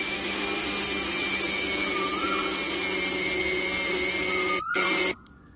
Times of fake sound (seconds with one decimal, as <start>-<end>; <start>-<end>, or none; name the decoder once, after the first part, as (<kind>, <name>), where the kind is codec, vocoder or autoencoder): none